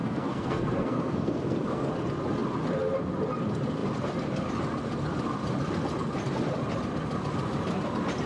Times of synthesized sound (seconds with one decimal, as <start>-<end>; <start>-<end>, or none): 0.0-1.9